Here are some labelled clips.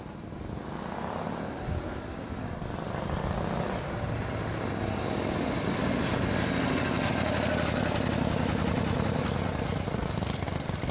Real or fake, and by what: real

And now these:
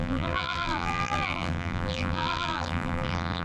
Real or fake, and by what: fake, vocoder, BigVGAN v2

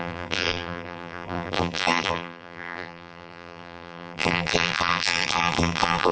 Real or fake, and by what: fake, vocoder, BigVGAN v2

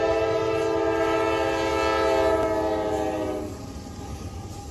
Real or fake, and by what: real